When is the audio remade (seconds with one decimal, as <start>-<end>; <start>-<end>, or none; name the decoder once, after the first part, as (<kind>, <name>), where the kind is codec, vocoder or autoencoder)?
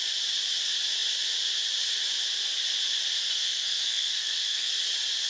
3.2-4.7 (codec, SNAC)